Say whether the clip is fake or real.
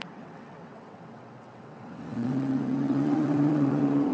fake